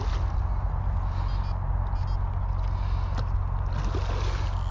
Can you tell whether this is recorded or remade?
recorded